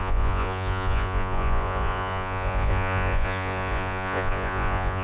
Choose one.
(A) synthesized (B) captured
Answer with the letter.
A